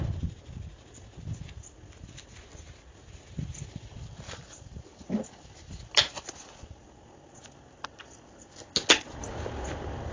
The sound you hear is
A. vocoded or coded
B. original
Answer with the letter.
B